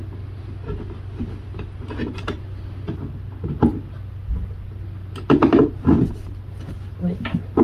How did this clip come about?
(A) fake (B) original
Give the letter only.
B